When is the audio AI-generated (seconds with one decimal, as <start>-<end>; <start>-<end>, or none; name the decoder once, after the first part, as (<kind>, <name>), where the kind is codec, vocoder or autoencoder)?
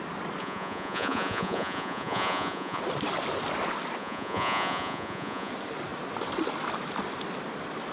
0.4-2.8 (vocoder, Vocos); 4.0-5.5